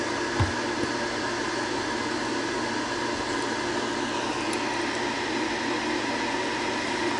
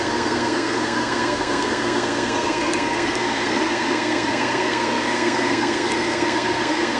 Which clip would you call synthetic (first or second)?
second